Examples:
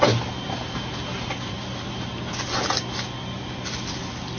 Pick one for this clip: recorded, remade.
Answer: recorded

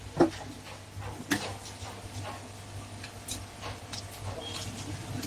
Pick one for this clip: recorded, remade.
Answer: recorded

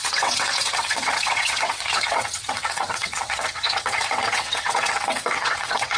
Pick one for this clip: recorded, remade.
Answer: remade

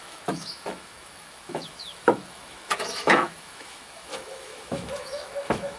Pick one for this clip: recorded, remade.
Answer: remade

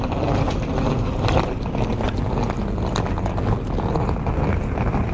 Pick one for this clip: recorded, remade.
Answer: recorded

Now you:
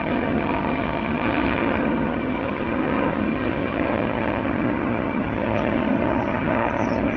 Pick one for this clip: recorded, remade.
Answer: remade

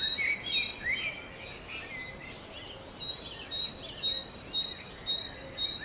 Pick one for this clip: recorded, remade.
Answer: recorded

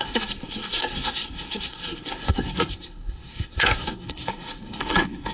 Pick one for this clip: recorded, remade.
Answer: remade